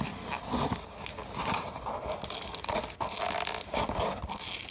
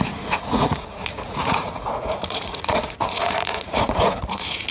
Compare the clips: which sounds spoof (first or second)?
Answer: second